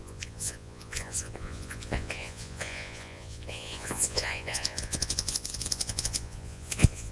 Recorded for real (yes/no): no